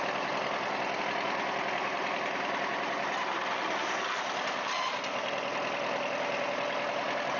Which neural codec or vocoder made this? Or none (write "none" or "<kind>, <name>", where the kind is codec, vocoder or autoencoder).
none